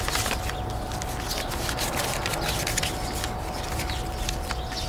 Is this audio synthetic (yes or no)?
no